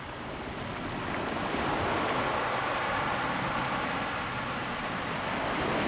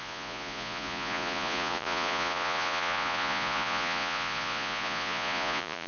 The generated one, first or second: second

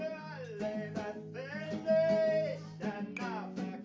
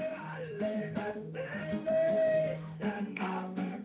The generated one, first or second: second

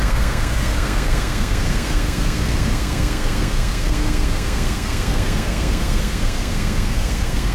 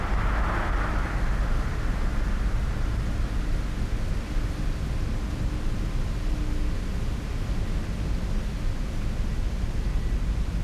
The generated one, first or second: first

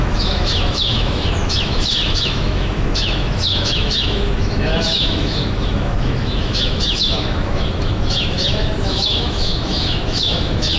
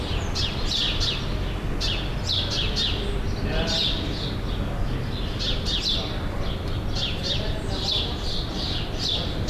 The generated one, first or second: first